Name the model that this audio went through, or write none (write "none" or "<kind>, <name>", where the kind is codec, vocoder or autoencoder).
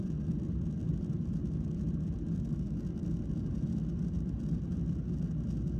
none